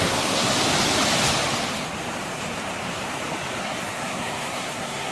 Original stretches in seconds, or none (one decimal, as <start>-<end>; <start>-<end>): 0.5-3.6